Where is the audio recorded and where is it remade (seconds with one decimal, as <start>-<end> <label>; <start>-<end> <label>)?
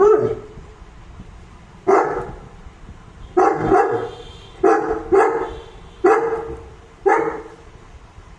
0.0-1.7 remade; 1.7-6.7 recorded; 6.7-8.4 remade